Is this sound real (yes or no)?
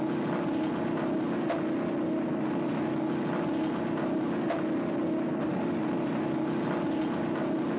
yes